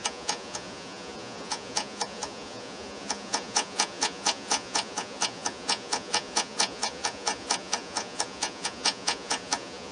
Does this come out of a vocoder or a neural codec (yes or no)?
yes